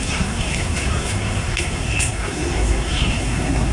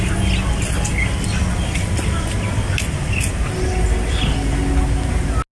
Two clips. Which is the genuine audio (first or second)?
second